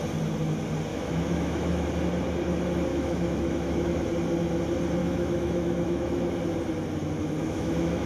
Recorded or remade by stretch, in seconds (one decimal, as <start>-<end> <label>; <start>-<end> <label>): 0.0-0.9 recorded; 0.9-1.9 remade; 1.9-2.9 recorded; 2.9-4.1 remade; 4.1-5.0 recorded; 5.0-6.2 remade; 6.2-7.4 recorded; 7.4-8.1 remade